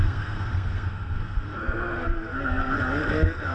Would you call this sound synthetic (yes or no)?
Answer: yes